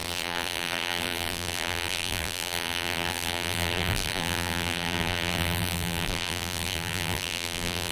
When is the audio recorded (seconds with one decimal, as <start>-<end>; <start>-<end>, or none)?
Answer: none